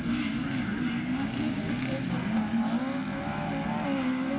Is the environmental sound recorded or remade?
recorded